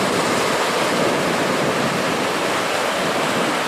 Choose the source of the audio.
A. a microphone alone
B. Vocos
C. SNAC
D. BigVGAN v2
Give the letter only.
A